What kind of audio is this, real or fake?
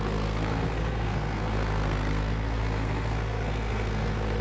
fake